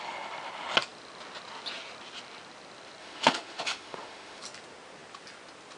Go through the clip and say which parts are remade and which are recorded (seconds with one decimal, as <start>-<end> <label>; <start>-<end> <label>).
0.0-3.0 recorded; 3.0-4.4 remade; 4.4-5.8 recorded